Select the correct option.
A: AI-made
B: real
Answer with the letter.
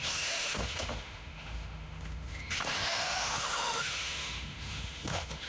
A